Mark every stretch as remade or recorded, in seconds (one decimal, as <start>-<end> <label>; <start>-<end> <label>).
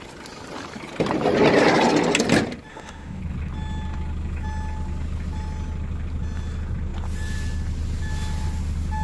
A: 0.0-2.7 recorded; 2.7-3.2 remade; 3.2-9.0 recorded